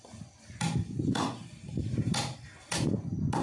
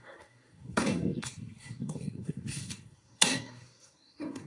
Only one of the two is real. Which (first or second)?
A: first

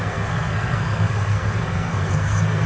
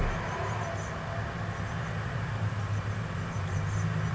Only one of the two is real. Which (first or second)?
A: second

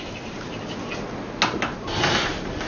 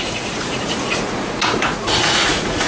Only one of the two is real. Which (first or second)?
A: first